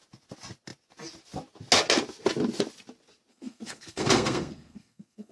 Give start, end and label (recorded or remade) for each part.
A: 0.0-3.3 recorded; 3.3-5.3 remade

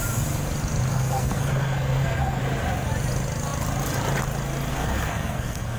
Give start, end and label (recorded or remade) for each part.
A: 0.0-0.9 recorded; 0.9-2.4 remade; 2.4-4.7 recorded; 4.7-5.8 remade

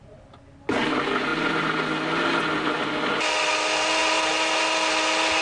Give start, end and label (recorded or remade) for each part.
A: 0.0-5.4 recorded